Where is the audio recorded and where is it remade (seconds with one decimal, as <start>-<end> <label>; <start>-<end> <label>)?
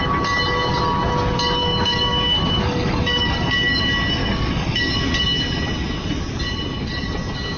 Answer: 0.0-1.6 recorded; 1.6-3.8 remade; 3.8-4.2 recorded; 4.2-4.8 remade; 4.8-7.6 recorded